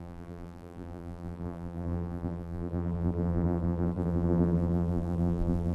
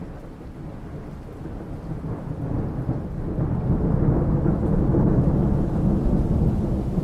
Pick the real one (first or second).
second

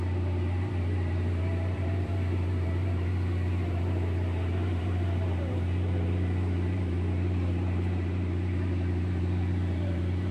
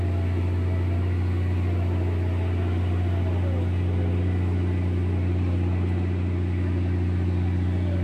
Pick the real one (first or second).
second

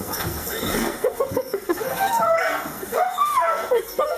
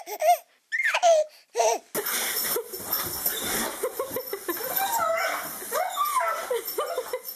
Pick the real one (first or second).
second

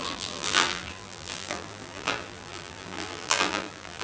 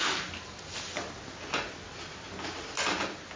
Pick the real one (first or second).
second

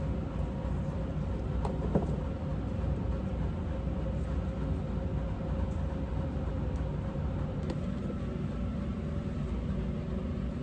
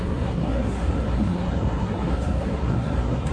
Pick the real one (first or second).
first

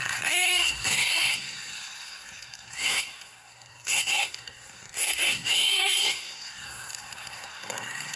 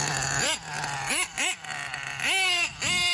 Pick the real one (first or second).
second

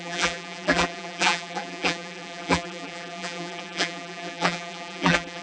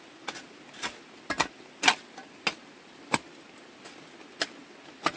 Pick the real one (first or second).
second